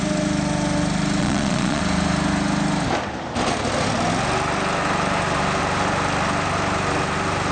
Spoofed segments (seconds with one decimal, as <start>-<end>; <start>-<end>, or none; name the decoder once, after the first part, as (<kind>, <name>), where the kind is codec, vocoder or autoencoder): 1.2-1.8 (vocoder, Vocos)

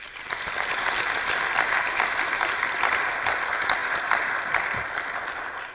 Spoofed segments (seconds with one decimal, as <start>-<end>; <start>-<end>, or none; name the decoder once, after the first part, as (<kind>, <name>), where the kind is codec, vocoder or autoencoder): none

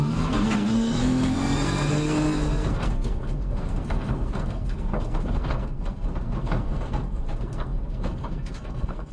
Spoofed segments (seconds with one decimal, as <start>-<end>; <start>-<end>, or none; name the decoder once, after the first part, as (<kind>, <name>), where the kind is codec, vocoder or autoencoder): 0.0-9.1 (codec, SNAC)

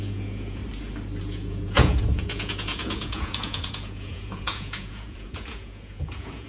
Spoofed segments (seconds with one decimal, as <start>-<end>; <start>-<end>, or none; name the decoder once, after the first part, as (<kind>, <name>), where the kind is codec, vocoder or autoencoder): 0.0-0.6 (vocoder, Vocos); 1.2-6.5

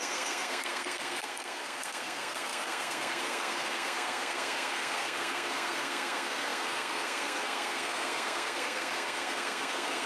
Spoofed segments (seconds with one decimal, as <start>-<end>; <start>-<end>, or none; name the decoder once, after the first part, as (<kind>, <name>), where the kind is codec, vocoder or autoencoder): 0.0-10.1 (codec, SNAC)